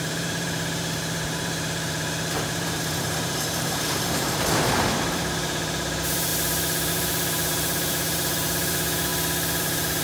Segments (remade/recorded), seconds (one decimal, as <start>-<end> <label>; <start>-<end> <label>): 0.0-6.3 remade; 6.3-6.9 recorded; 6.9-9.1 remade; 9.1-9.6 recorded; 9.6-10.0 remade